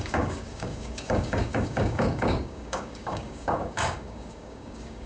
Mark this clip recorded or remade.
remade